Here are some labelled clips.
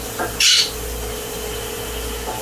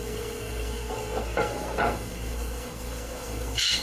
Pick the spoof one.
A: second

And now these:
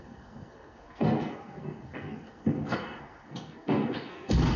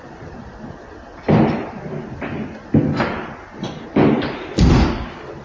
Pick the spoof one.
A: first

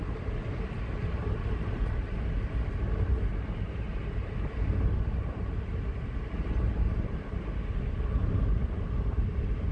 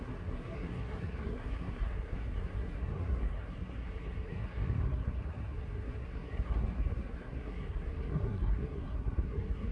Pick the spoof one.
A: second